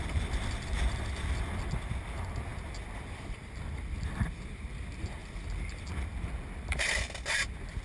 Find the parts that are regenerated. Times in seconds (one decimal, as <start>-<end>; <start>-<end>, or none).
2.5-4.4; 5.2-6.2

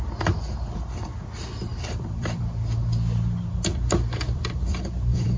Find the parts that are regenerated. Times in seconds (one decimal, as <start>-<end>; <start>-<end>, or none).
1.7-2.4; 3.7-5.4

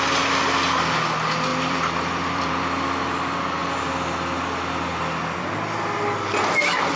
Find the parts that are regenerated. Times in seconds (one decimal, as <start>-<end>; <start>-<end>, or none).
1.5-2.6

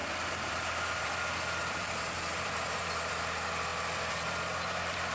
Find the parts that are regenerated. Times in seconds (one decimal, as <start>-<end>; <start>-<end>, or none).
0.0-3.1; 3.7-5.1

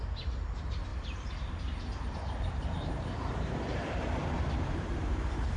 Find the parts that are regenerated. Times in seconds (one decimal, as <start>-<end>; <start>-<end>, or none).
0.0-5.6

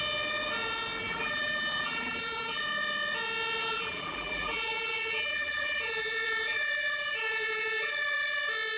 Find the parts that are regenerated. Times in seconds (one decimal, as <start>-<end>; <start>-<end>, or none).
1.0-2.6; 3.6-8.4

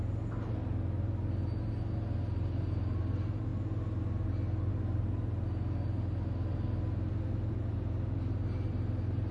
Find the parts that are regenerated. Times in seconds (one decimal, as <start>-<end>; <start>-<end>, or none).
none